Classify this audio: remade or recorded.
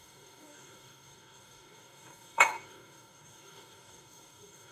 remade